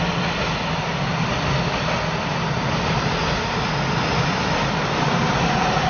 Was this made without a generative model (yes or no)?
yes